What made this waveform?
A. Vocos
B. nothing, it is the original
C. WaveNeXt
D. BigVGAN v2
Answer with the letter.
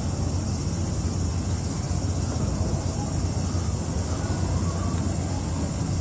B